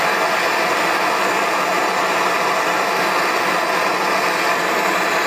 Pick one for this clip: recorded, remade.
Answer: recorded